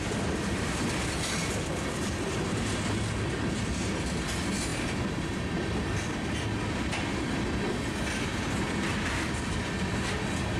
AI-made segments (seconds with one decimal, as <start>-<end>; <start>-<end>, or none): none